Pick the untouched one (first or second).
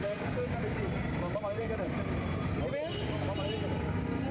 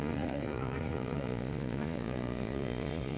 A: first